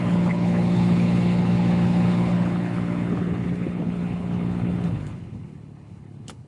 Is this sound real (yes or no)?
no